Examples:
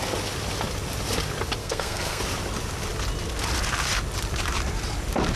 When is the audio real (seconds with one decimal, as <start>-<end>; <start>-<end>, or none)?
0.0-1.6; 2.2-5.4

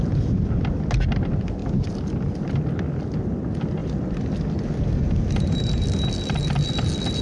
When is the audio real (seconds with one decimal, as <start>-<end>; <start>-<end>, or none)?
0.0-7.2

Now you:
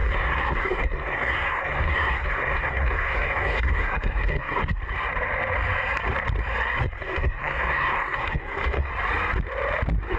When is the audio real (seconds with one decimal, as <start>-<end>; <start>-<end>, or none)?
4.8-6.8; 8.9-10.2